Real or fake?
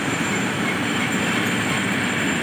fake